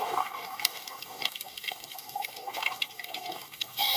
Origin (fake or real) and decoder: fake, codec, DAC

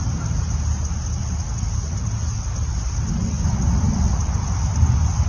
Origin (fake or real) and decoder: real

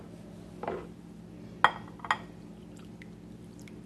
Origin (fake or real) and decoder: real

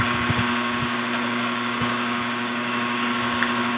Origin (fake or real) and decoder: fake, codec, DAC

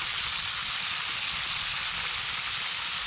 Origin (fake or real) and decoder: real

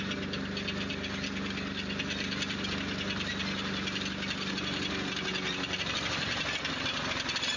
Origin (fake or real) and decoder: real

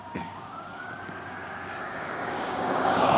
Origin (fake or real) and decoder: fake, codec, DAC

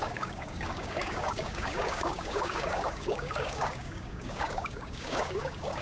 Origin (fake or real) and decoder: fake, codec, DAC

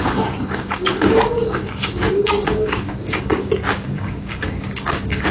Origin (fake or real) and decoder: fake, codec, DAC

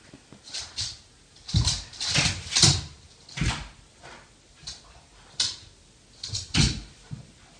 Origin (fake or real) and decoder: real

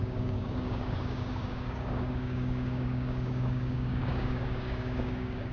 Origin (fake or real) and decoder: fake, codec, DAC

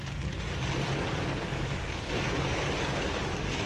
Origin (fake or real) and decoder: fake, codec, DAC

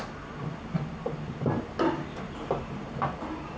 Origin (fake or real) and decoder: real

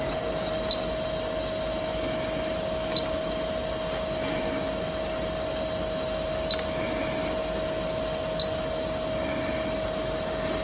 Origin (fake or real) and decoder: real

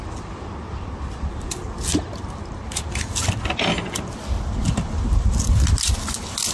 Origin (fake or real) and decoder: real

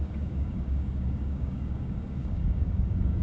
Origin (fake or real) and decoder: fake, codec, DAC